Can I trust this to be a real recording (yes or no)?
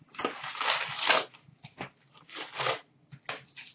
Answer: yes